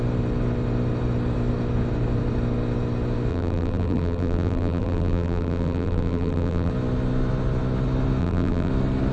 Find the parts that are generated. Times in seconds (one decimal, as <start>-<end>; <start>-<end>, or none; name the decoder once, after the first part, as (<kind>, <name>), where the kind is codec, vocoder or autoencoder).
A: 3.3-6.7 (vocoder, BigVGAN v2); 8.2-8.7